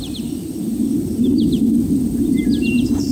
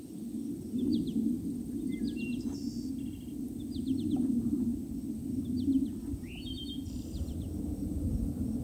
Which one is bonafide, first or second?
second